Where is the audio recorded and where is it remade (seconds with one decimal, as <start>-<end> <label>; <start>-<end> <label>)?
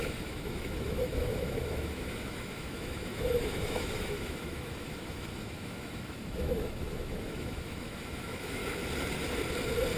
0.0-8.6 remade; 8.6-10.0 recorded